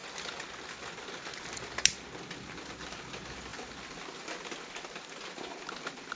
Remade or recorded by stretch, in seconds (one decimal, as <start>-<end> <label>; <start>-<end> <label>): 0.0-6.2 recorded